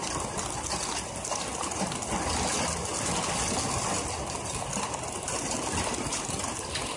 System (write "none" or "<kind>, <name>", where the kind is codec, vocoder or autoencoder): none